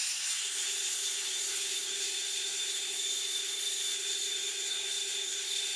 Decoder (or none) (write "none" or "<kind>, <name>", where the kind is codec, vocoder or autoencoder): codec, SNAC